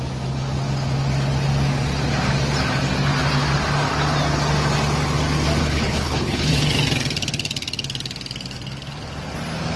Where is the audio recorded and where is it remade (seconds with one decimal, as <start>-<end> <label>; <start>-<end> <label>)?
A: 0.0-5.6 recorded; 5.6-6.6 remade; 6.6-9.8 recorded